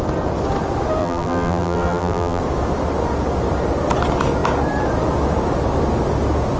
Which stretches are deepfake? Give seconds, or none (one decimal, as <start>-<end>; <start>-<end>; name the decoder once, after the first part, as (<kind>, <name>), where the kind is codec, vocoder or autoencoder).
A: 1.0-2.4 (vocoder, BigVGAN v2)